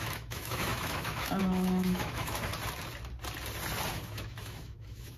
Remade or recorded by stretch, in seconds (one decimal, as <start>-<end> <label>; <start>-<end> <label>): 0.0-2.5 remade; 2.5-3.9 recorded; 3.9-5.2 remade